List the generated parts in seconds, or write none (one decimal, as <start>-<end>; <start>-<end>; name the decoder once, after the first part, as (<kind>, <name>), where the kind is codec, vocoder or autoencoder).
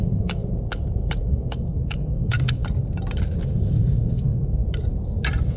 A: 0.0-0.4 (codec, DAC); 1.3-2.6; 3.5-4.6